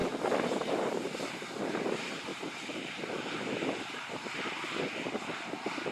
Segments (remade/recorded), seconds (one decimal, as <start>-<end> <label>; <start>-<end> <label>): 0.0-2.3 remade; 2.3-5.9 recorded